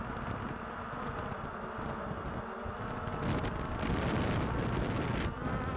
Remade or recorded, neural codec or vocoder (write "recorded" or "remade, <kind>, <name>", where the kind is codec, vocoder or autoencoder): recorded